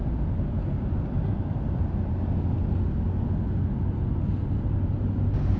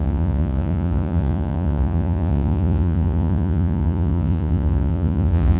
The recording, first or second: first